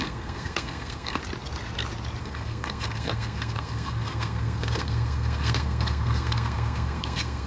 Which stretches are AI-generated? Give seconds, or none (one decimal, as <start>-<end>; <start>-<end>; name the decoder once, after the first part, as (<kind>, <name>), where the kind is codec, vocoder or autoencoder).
0.0-1.2 (codec, SNAC); 2.2-7.5